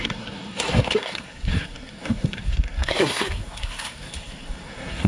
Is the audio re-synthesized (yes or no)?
yes